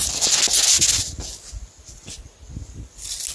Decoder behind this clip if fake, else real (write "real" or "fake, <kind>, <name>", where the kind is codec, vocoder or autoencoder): real